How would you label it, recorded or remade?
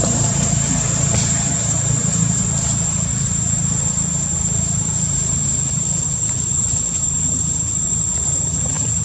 remade